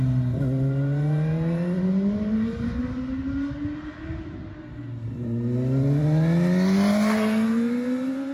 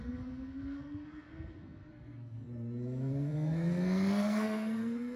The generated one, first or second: second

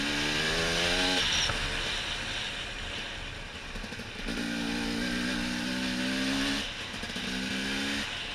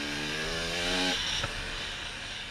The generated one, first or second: second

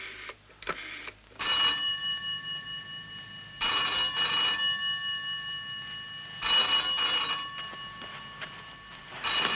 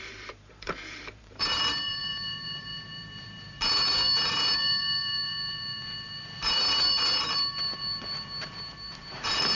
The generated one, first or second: second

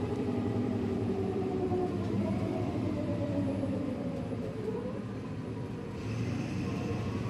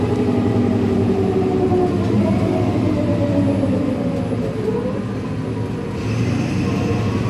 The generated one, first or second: first